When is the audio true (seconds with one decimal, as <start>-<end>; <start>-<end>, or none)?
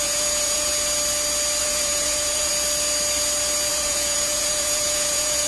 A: 0.7-1.6; 2.5-3.7